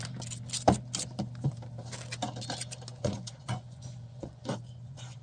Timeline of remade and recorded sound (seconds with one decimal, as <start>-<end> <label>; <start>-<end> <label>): 0.0-2.9 recorded; 2.9-5.2 remade